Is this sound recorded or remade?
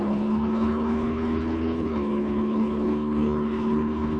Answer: remade